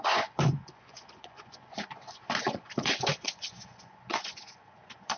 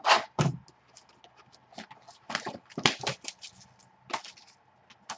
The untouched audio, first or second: second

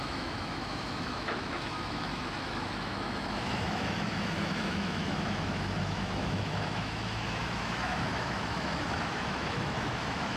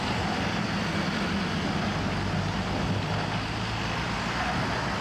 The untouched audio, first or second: second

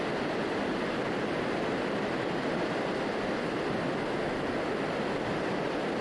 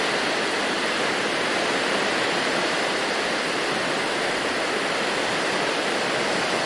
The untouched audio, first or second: first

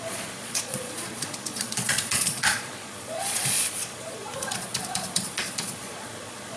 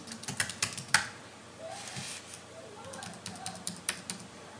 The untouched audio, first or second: second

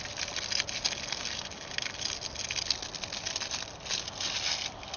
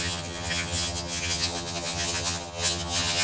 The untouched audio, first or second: first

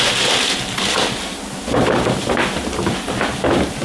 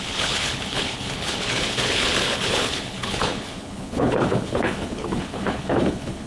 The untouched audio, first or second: first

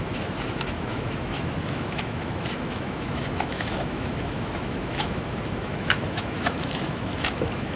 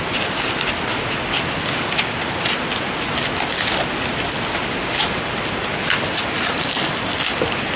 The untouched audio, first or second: second